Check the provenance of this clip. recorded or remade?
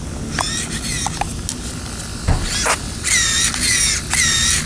recorded